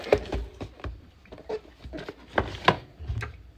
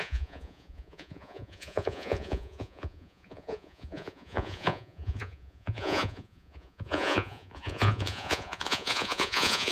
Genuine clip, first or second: first